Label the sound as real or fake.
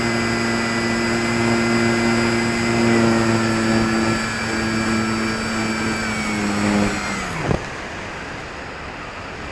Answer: real